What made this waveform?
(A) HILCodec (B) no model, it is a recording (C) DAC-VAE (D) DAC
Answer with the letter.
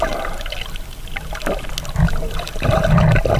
B